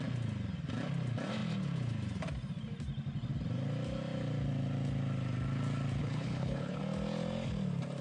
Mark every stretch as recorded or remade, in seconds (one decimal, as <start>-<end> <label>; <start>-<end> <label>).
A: 0.0-6.0 recorded; 6.0-6.8 remade; 6.8-8.0 recorded